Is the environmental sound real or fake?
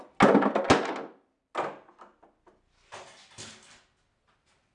real